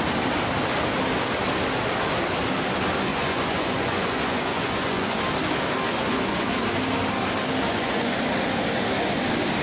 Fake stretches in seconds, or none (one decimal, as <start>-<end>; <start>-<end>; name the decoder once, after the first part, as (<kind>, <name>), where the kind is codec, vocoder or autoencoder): 3.1-5.2 (vocoder, Vocos); 5.9-6.5; 7.7-8.2